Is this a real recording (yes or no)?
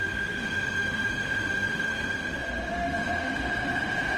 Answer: no